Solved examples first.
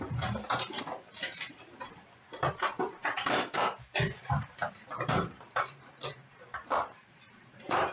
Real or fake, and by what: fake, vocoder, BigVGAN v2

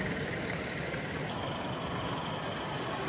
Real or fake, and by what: real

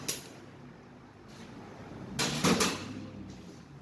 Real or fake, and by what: real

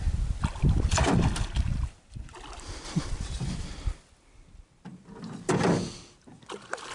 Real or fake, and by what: real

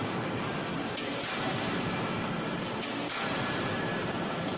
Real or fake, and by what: fake, vocoder, BigVGAN v2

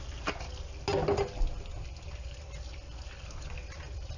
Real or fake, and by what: real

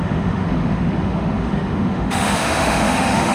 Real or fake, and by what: fake, autoencoder, DAC-VAE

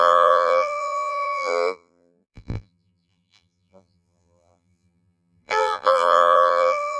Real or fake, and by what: fake, vocoder, BigVGAN v2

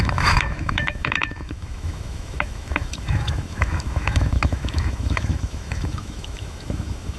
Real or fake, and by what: fake, autoencoder, DAC-VAE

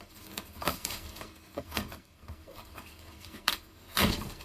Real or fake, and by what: fake, codec, SNAC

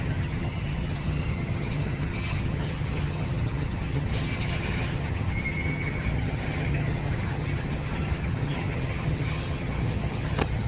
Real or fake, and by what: fake, vocoder, HiFi-GAN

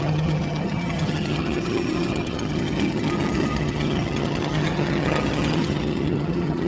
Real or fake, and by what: fake, vocoder, HiFi-GAN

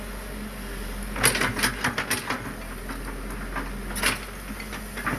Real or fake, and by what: real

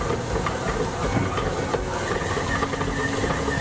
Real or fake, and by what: real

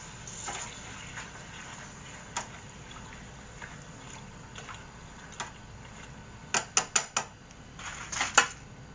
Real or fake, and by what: real